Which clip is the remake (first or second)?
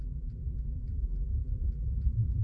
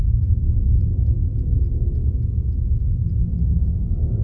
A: first